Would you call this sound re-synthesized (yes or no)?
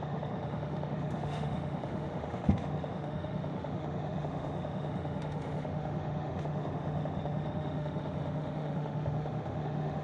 yes